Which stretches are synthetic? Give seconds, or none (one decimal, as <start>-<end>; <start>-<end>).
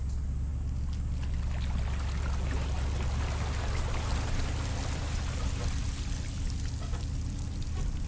none